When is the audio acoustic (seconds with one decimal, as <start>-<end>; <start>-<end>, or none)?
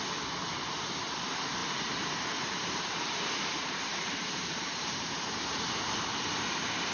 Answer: 0.0-1.6; 5.6-6.9